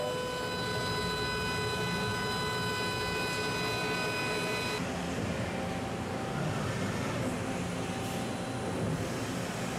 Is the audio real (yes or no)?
yes